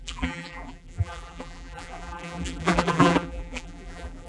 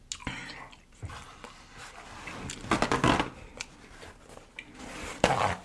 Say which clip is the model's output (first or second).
first